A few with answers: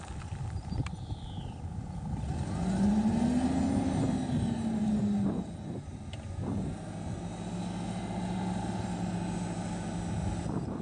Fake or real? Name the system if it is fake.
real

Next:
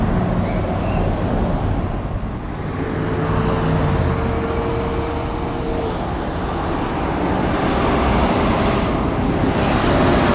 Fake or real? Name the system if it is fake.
real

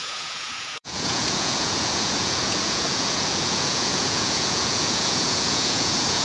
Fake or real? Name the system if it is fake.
fake, vocoder, Vocos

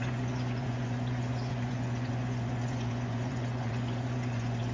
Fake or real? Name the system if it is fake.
fake, vocoder, Vocos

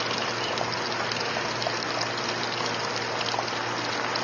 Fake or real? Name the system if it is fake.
real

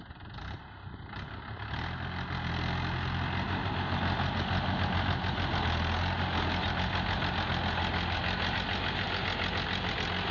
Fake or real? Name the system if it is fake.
real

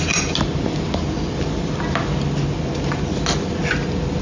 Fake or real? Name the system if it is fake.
real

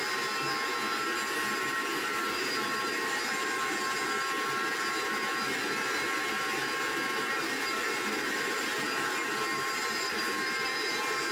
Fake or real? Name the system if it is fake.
real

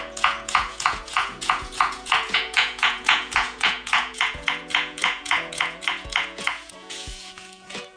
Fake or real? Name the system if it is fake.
fake, vocoder, Vocos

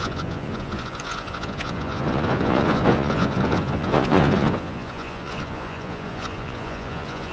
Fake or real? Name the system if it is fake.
fake, vocoder, Vocos